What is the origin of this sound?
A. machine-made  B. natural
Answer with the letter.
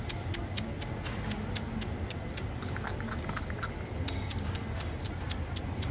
B